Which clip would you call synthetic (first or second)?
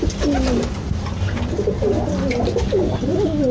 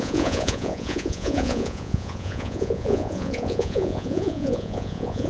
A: second